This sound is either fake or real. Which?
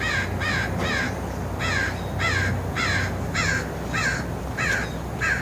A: real